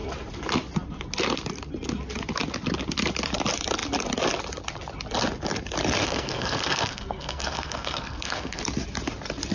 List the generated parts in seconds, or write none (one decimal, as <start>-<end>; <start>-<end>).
6.0-8.6